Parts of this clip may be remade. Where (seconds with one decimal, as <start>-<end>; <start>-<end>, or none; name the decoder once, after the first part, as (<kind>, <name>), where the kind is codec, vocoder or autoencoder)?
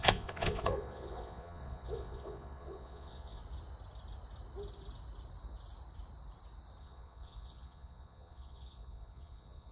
0.0-3.4 (vocoder, Vocos); 6.8-9.7